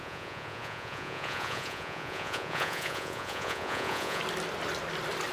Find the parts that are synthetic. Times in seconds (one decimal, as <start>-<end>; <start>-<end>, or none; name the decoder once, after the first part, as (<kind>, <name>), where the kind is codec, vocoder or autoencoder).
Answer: 0.0-4.2 (vocoder, Vocos)